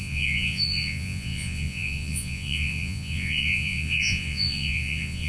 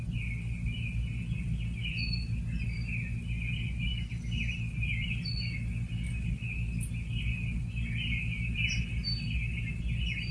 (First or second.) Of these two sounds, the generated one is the first